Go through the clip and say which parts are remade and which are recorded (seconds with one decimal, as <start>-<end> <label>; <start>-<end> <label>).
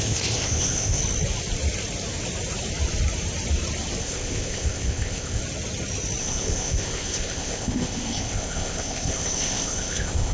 0.0-1.0 remade; 1.0-4.0 recorded; 4.0-5.4 remade; 5.4-6.2 recorded; 6.2-10.3 remade